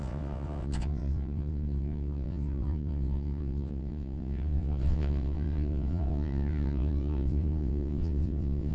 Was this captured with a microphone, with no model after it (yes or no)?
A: no